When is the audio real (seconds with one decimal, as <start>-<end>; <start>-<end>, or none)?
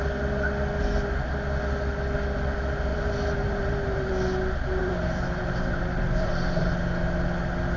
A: 0.0-2.9; 4.1-4.8; 6.3-7.8